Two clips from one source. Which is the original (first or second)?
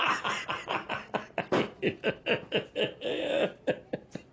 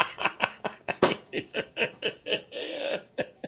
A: first